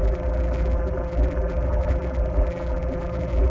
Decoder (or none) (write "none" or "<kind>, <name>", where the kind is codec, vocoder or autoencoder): vocoder, BigVGAN v2